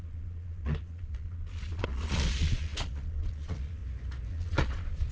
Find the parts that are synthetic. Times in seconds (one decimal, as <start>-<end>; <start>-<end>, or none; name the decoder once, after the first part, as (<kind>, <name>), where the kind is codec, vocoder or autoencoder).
0.0-3.8 (vocoder, Vocos); 4.3-5.1